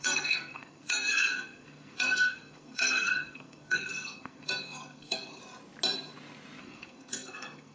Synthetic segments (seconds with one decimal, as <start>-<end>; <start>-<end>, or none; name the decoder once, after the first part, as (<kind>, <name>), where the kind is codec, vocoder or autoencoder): 0.0-5.4 (codec, SNAC); 6.6-7.7